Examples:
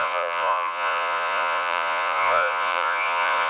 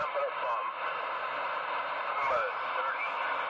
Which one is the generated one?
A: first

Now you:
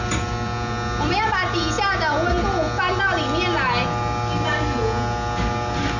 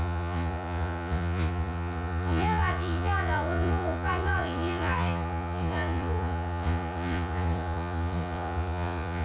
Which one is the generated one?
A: second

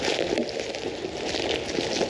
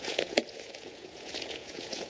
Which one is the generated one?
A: second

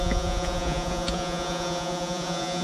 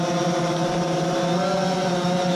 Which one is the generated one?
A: first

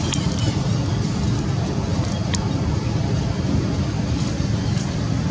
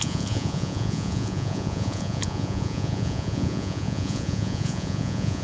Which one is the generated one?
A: second